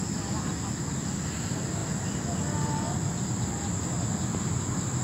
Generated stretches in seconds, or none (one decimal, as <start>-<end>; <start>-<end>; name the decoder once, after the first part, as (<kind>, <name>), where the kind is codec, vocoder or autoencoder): none